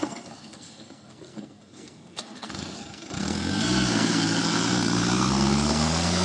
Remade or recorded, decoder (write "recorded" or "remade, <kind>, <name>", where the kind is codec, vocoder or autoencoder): remade, codec, SNAC